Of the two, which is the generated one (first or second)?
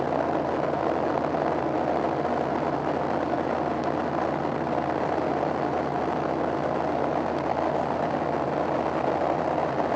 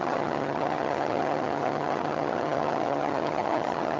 second